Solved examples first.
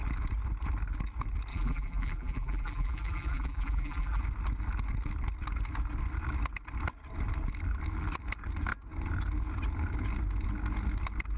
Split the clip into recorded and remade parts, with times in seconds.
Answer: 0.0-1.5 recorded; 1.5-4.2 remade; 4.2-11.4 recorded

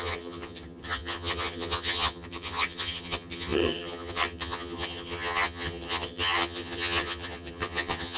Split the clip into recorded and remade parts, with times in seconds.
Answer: 0.0-8.2 remade

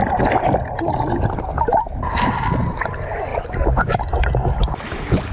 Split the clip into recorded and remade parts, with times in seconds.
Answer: 0.0-5.3 recorded

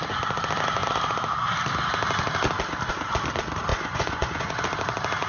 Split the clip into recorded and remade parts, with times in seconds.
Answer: 0.0-3.7 recorded; 3.7-4.6 remade; 4.6-5.3 recorded